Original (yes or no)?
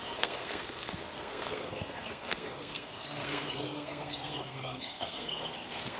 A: no